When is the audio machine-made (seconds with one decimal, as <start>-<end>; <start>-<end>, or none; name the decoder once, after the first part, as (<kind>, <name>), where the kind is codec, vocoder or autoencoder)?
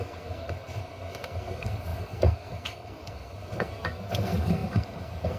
0.0-5.4 (codec, SNAC)